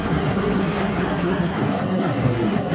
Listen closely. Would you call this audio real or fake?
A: fake